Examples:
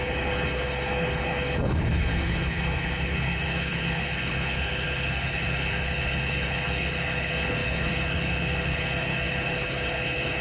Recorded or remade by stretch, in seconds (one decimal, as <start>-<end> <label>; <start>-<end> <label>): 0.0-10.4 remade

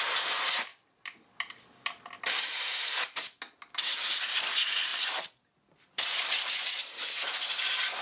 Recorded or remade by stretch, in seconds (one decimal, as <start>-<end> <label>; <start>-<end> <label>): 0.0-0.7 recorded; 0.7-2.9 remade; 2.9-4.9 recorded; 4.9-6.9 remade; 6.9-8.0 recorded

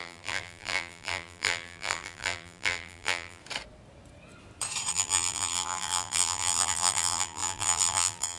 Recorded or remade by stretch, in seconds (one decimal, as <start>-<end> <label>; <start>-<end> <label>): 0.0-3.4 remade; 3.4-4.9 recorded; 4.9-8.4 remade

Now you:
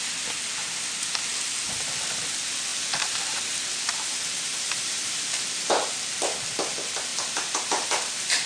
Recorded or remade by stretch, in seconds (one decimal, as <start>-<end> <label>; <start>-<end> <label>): 0.0-2.7 recorded; 2.7-5.9 remade; 5.9-7.1 recorded; 7.1-8.5 remade

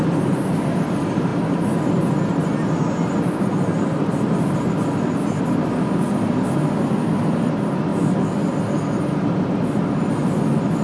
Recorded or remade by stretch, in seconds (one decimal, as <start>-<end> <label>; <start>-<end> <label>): 0.0-10.8 recorded

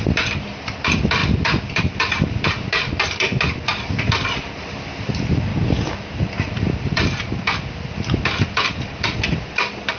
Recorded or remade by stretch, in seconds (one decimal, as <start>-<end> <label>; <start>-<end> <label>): 0.0-1.2 remade; 1.2-1.8 recorded; 1.8-2.9 remade; 2.9-3.8 recorded; 3.8-10.0 remade

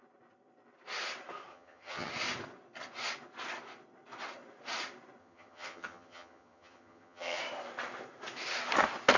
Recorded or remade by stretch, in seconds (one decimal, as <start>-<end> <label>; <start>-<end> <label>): 0.0-1.5 recorded; 1.5-2.1 remade; 2.1-5.2 recorded; 5.2-7.4 remade; 7.4-9.2 recorded

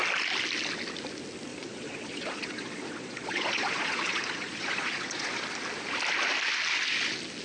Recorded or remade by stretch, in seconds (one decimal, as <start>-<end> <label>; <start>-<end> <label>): 0.0-1.5 recorded; 1.5-5.4 remade; 5.4-7.4 recorded